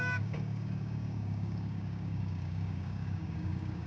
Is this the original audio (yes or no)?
no